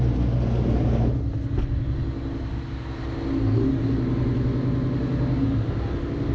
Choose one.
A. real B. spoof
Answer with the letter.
A